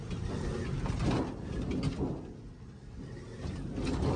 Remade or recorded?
recorded